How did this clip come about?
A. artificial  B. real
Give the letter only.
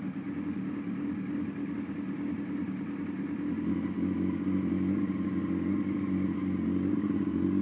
B